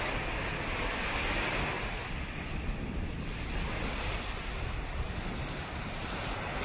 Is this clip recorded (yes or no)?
yes